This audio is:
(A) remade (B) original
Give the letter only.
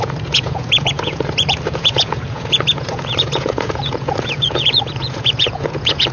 A